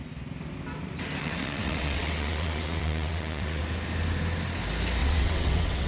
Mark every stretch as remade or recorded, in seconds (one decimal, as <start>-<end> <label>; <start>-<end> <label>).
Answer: 0.0-1.2 recorded; 1.2-3.6 remade; 3.6-5.0 recorded; 5.0-5.9 remade